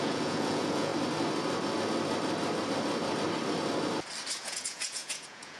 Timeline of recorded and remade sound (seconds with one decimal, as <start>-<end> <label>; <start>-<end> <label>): 0.0-0.9 remade; 0.9-4.3 recorded; 4.3-5.6 remade